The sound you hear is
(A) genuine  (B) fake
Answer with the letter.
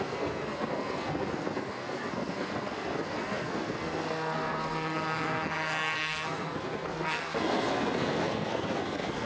B